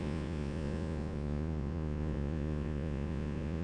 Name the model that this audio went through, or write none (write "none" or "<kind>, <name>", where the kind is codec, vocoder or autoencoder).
vocoder, Vocos